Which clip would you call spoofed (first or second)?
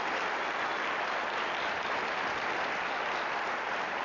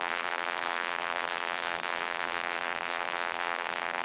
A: second